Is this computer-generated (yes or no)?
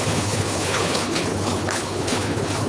yes